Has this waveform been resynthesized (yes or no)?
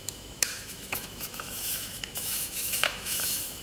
yes